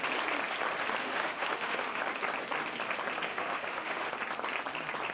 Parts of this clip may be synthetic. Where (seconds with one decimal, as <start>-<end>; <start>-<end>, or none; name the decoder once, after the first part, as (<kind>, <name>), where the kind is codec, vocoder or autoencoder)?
1.0-2.0 (autoencoder, DAC-VAE); 3.3-4.1